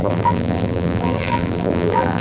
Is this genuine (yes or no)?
no